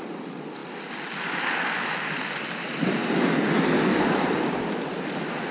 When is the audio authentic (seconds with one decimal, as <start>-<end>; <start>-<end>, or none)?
0.0-3.9; 4.6-5.5